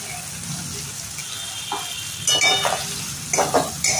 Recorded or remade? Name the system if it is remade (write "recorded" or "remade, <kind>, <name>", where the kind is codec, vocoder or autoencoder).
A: recorded